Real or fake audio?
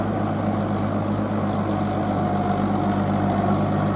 real